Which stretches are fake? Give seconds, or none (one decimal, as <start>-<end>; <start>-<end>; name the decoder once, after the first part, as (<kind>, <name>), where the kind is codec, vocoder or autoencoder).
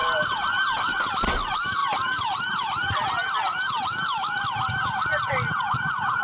none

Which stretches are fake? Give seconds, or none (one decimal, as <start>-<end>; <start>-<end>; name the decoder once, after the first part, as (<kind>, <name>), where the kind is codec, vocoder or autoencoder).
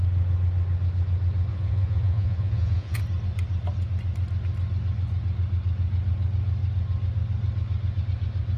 1.5-3.0 (vocoder, Vocos)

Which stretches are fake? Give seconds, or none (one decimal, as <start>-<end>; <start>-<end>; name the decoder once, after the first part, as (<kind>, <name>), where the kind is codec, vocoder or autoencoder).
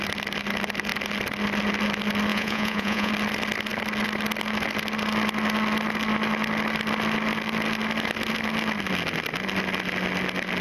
2.3-3.1 (vocoder, Vocos)